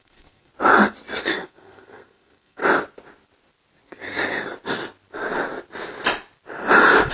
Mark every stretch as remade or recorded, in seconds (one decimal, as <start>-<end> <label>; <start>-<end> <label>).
0.0-0.5 remade; 0.5-1.2 recorded; 1.2-2.6 remade; 2.6-7.1 recorded